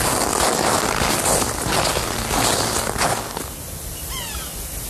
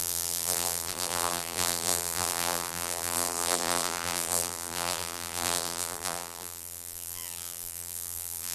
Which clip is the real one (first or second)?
first